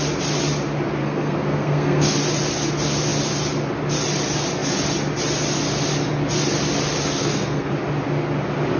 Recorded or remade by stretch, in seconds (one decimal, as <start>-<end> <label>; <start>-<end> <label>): 0.0-1.0 recorded; 1.0-2.1 remade; 2.1-7.2 recorded; 7.2-7.7 remade; 7.7-8.8 recorded